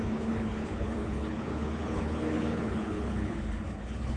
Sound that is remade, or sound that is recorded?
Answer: remade